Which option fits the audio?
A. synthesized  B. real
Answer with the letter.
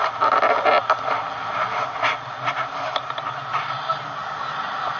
B